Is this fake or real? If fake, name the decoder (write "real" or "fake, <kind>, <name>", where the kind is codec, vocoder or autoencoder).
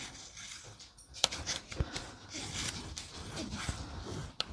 real